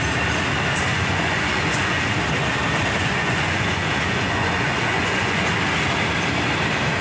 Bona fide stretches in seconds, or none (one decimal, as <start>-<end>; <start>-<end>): 0.0-0.9; 2.0-3.0; 5.5-7.0